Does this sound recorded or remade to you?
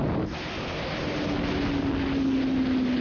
recorded